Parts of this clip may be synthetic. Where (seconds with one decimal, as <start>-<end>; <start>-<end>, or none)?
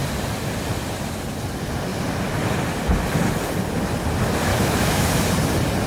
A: 4.5-5.3